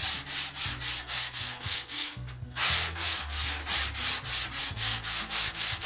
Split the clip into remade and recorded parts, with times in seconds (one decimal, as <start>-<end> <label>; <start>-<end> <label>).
0.0-1.0 recorded; 1.0-3.6 remade; 3.6-4.6 recorded; 4.6-5.9 remade